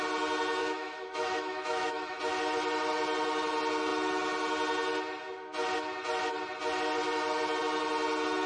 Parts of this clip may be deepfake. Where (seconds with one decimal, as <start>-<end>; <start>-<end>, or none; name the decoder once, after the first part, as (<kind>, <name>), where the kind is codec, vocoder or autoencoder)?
0.6-2.2 (autoencoder, DAC-VAE)